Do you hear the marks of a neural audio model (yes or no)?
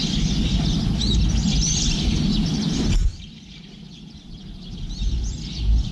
yes